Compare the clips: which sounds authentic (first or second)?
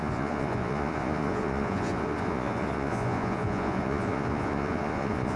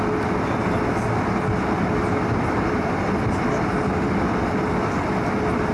second